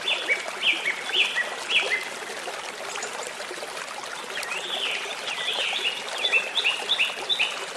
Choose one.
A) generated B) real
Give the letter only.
B